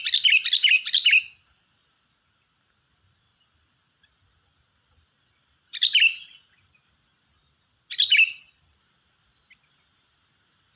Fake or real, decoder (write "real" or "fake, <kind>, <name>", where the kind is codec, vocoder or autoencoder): real